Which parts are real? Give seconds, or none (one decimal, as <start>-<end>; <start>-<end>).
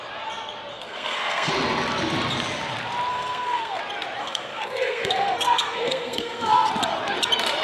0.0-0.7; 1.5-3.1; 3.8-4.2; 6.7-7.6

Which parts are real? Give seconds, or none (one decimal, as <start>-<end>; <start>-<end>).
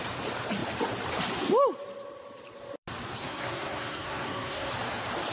0.0-3.2; 4.7-5.3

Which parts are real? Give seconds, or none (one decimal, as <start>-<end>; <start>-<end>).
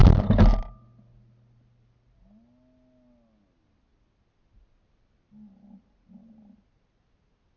0.0-7.6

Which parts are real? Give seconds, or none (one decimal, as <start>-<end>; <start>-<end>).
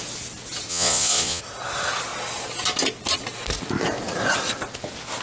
0.0-0.7; 1.4-5.2